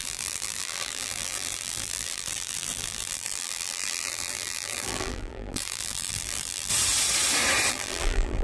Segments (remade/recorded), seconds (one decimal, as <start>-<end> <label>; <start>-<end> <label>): 0.0-6.7 remade; 6.7-7.7 recorded; 7.7-8.4 remade